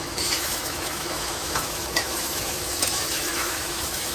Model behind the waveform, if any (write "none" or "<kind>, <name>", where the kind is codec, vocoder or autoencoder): autoencoder, DAC-VAE